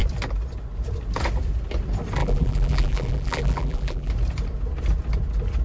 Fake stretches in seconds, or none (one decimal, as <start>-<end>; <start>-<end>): 2.2-4.1

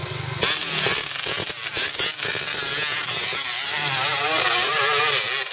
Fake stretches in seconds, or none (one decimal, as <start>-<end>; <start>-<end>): 2.9-5.0

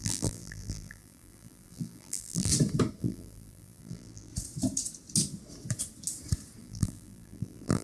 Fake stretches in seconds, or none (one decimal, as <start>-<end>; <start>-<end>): 0.0-2.5; 3.0-4.3; 6.6-7.8

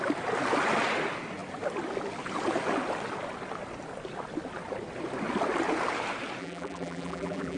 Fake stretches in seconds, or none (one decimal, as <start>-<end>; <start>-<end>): 6.4-7.6

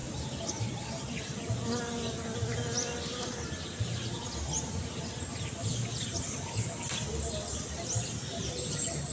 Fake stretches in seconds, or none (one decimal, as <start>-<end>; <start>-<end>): none